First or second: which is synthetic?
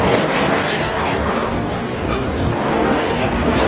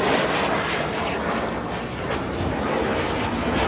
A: first